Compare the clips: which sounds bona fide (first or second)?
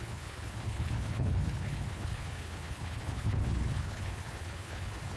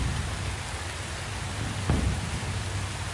second